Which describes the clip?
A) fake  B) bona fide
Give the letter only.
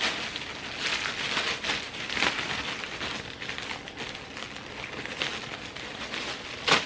B